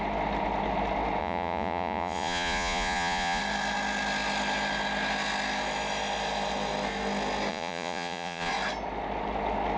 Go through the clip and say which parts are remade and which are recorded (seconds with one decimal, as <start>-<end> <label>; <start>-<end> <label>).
0.0-1.2 recorded; 1.2-3.4 remade; 3.4-7.5 recorded; 7.5-8.5 remade; 8.5-9.8 recorded